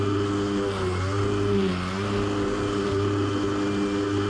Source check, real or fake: real